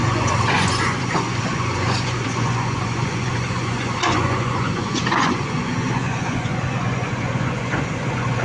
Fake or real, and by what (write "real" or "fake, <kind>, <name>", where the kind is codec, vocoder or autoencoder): fake, vocoder, Vocos